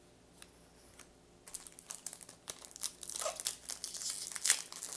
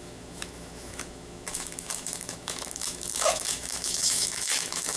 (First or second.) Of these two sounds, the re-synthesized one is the second